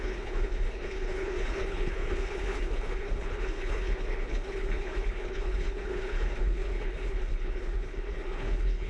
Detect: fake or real fake